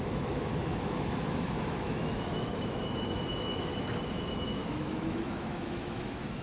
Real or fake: fake